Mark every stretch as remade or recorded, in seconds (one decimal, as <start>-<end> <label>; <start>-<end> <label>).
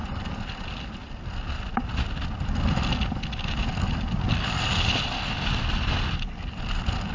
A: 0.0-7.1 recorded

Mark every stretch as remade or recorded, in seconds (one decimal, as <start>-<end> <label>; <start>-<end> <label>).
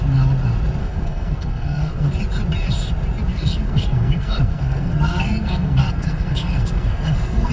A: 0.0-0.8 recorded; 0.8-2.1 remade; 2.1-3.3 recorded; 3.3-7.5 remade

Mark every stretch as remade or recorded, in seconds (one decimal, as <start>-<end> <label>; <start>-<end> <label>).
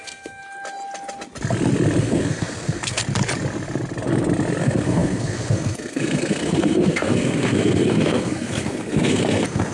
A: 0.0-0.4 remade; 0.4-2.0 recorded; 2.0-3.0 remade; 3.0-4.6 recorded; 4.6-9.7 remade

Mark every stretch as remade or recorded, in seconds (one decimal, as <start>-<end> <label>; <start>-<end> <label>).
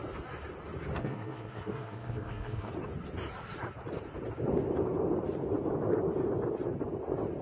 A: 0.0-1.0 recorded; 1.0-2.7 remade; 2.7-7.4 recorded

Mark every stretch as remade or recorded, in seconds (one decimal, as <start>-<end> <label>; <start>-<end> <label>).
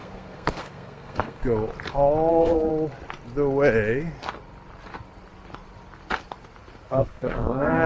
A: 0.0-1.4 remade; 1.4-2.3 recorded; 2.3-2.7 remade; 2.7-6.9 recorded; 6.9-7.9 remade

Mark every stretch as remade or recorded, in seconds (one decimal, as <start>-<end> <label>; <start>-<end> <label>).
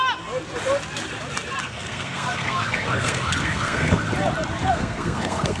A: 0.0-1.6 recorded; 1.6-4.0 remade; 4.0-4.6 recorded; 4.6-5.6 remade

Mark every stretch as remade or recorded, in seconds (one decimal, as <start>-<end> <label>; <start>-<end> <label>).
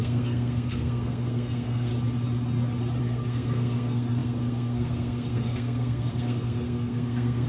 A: 0.0-1.9 remade; 1.9-3.0 recorded; 3.0-7.5 remade